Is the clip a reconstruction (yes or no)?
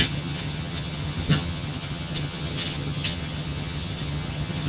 yes